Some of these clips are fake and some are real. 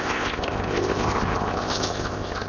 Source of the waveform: fake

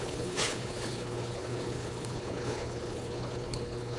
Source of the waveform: fake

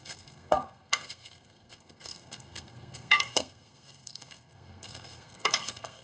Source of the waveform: fake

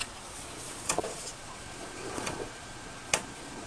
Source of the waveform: fake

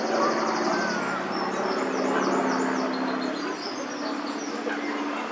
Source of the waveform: real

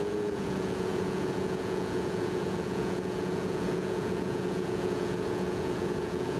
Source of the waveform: fake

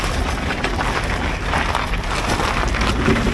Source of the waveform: real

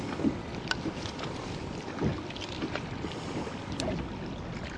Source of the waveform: real